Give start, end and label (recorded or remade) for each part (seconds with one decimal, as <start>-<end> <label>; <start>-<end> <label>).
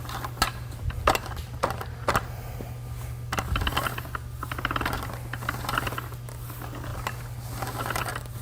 0.0-8.4 recorded